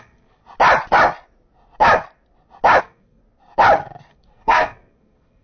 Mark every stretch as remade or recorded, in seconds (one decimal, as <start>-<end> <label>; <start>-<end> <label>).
0.0-0.4 remade; 0.4-2.8 recorded; 2.8-3.2 remade; 3.2-4.1 recorded; 4.1-5.4 remade